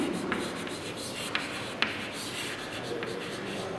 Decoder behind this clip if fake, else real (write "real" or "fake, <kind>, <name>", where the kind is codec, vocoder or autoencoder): real